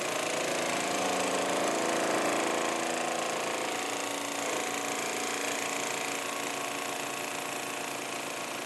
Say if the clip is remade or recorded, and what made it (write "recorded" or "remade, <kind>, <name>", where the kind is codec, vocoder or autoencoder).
recorded